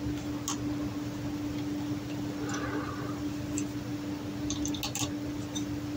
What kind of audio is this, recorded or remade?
recorded